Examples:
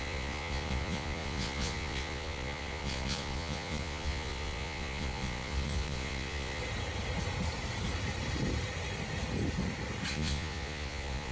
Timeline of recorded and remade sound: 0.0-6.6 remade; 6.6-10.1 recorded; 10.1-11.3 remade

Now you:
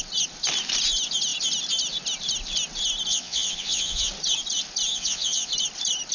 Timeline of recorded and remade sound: 0.0-3.1 recorded; 3.1-4.1 remade; 4.1-4.9 recorded; 4.9-5.5 remade; 5.5-6.1 recorded

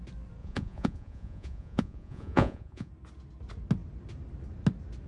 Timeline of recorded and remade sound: 0.0-0.4 recorded; 0.4-2.9 remade; 2.9-5.1 recorded

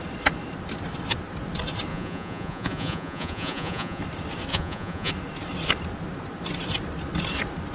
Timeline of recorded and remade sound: 0.0-1.9 recorded; 1.9-4.0 remade; 4.0-4.5 recorded; 4.5-5.1 remade; 5.1-7.7 recorded

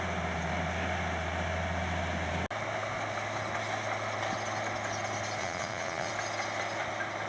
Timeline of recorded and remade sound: 0.0-5.4 recorded; 5.4-6.1 remade; 6.1-7.3 recorded

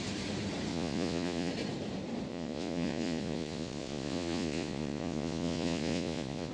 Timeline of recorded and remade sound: 0.0-0.7 recorded; 0.7-1.5 remade; 1.5-2.3 recorded; 2.3-6.5 remade